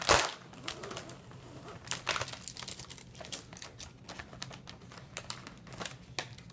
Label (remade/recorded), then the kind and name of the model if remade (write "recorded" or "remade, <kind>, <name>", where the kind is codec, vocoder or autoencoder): recorded